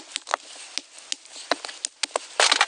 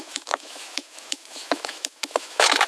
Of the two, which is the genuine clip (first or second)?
first